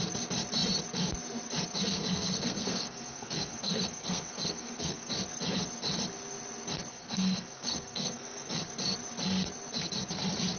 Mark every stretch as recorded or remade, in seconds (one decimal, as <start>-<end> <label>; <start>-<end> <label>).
0.0-1.9 recorded; 1.9-5.1 remade; 5.1-6.9 recorded; 6.9-8.7 remade; 8.7-10.6 recorded